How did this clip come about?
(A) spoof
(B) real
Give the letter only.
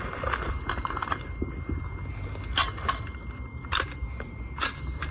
B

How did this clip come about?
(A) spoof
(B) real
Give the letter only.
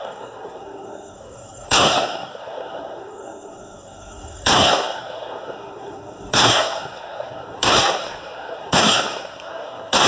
A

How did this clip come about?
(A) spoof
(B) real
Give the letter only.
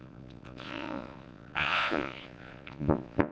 A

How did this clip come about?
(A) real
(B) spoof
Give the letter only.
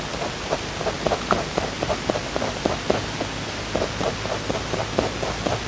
A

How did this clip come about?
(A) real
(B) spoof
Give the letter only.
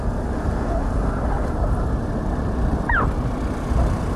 A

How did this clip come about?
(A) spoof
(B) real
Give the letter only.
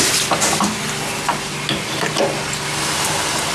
B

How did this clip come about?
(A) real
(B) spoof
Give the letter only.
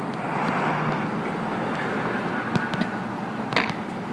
A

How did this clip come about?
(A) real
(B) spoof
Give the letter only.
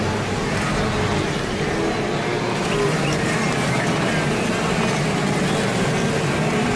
A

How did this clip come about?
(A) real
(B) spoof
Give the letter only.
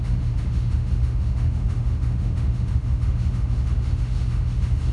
B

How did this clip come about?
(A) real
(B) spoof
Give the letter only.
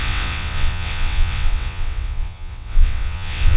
B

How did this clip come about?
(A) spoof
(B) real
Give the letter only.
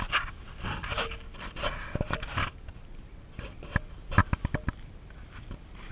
B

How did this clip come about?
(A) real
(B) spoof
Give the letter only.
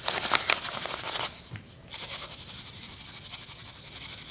A